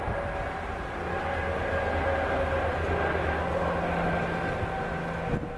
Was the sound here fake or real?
real